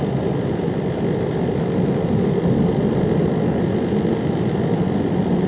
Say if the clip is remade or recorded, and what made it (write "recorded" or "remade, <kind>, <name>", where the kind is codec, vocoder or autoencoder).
recorded